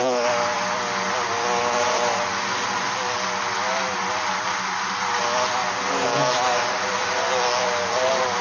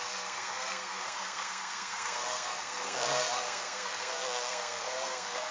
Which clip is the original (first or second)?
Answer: first